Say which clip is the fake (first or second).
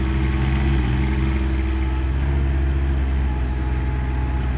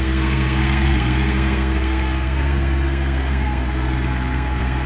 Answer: second